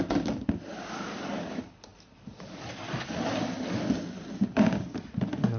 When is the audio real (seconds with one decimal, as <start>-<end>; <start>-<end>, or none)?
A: 0.0-5.6